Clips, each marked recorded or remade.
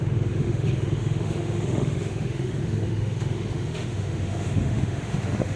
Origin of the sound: remade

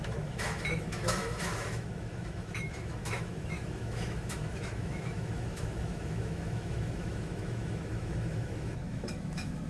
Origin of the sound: remade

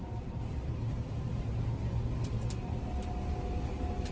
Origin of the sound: recorded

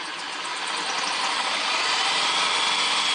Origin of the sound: recorded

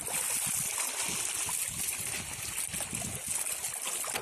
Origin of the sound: recorded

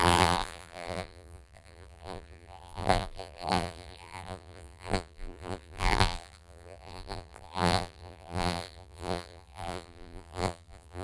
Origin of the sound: remade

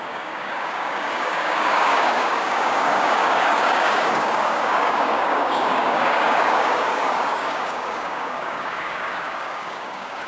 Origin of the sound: remade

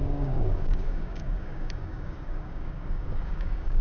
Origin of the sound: remade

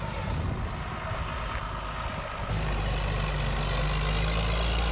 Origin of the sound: recorded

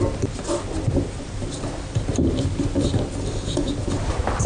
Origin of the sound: recorded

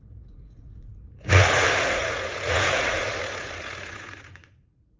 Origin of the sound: remade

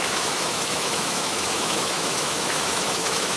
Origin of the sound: remade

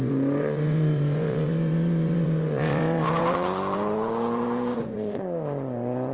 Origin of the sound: remade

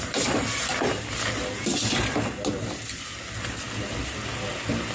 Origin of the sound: recorded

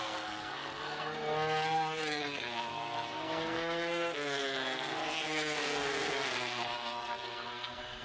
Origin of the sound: remade